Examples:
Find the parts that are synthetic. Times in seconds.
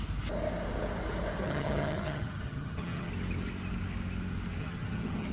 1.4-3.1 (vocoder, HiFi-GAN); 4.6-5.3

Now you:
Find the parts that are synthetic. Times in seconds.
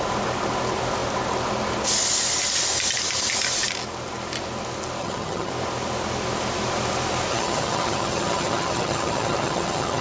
5.0-5.5 (vocoder, HiFi-GAN); 7.3-10.0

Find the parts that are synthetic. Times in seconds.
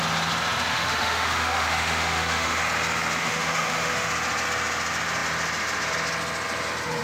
0.7-2.6 (autoencoder, DAC-VAE); 3.2-4.1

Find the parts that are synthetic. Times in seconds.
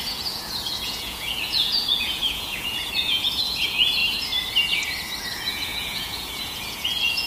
0.0-4.0 (vocoder, Vocos); 5.2-7.3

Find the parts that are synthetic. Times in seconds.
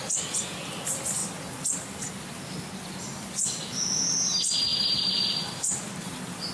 4.7-6.5 (vocoder, BigVGAN v2)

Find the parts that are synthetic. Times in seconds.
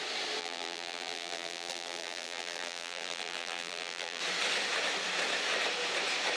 0.4-4.2 (vocoder, BigVGAN v2)